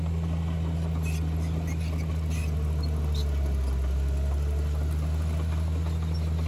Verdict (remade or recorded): recorded